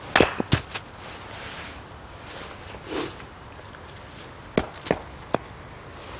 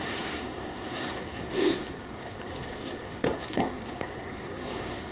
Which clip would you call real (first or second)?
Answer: first